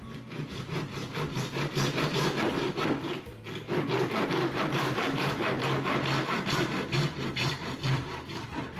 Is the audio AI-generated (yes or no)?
yes